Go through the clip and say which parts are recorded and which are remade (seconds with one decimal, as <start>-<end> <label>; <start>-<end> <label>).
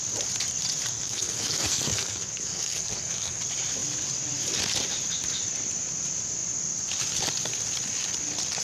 0.0-0.9 recorded; 0.9-3.4 remade; 3.4-8.6 recorded